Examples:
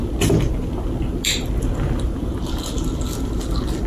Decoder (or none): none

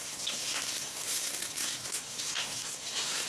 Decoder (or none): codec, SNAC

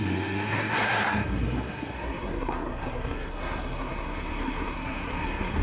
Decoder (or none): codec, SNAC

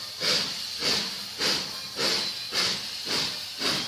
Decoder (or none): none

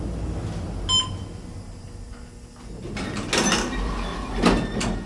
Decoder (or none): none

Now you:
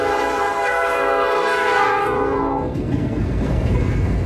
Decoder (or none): codec, SNAC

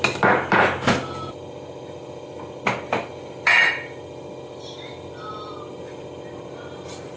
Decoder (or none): none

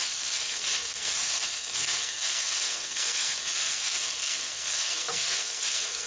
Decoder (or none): codec, SNAC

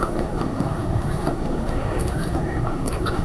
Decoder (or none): codec, SNAC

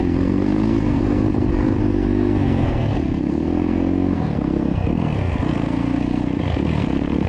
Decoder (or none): codec, SNAC